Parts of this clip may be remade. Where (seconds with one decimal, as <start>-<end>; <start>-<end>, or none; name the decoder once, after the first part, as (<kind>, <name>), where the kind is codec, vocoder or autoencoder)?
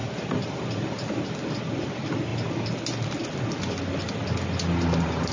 0.0-1.3 (vocoder, BigVGAN v2)